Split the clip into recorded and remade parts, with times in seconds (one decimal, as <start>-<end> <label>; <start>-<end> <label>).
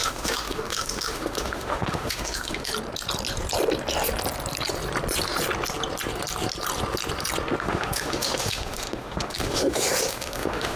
0.0-2.7 remade; 2.7-7.6 recorded; 7.6-10.8 remade